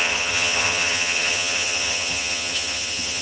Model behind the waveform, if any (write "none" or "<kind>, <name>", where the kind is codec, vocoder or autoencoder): vocoder, HiFi-GAN